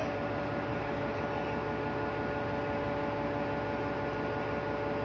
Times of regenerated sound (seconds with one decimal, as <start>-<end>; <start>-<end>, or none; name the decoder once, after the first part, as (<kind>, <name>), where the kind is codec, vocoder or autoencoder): 0.7-1.2 (codec, HILCodec)